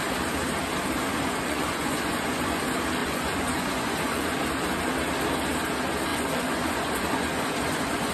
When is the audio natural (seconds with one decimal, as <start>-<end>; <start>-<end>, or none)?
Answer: 0.0-1.1; 2.6-3.0; 4.4-6.1